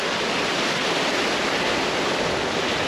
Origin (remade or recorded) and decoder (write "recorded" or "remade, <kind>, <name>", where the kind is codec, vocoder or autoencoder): recorded